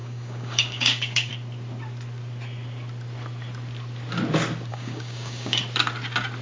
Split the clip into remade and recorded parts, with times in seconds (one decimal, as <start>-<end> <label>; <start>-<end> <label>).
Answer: 0.0-1.3 remade; 1.3-4.7 recorded; 4.7-5.6 remade; 5.6-6.4 recorded